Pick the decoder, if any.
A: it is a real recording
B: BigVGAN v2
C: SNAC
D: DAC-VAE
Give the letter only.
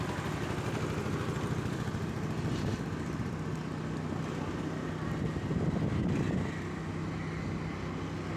A